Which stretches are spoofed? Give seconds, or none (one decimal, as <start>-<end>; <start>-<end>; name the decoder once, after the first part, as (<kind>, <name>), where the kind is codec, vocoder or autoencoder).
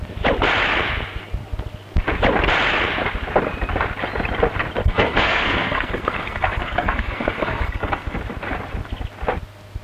4.8-8.2 (codec, SNAC)